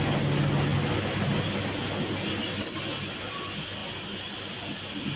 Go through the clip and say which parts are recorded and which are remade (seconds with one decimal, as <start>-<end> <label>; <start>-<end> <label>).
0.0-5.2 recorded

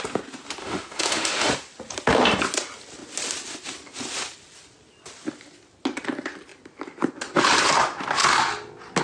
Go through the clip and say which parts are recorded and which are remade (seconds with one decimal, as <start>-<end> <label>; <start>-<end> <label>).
0.0-0.6 recorded; 0.6-1.5 remade; 1.5-9.0 recorded

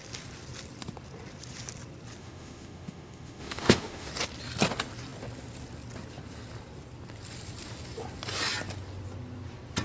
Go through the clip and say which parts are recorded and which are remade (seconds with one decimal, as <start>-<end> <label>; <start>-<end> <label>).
0.0-2.2 recorded; 2.2-4.1 remade; 4.1-9.8 recorded

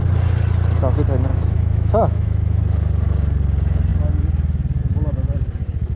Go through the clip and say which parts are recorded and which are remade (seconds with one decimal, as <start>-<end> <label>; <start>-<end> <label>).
0.0-1.3 recorded; 1.3-2.6 remade; 2.6-6.0 recorded

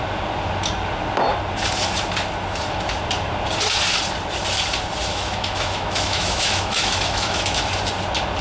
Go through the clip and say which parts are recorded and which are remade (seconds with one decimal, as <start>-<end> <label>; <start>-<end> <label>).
0.0-5.1 recorded; 5.1-7.7 remade; 7.7-8.4 recorded